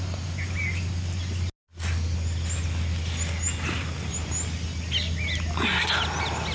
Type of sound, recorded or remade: recorded